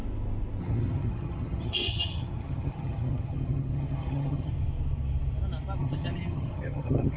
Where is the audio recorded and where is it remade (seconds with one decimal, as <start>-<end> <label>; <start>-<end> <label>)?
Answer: 0.0-0.6 recorded; 0.6-4.5 remade; 4.5-5.8 recorded; 5.8-7.2 remade